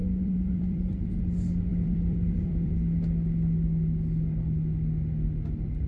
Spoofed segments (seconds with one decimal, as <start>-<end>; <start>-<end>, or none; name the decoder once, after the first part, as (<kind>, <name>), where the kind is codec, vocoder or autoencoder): 0.0-1.1 (vocoder, BigVGAN v2); 1.7-2.7